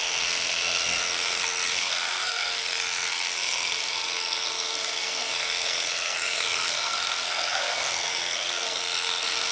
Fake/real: fake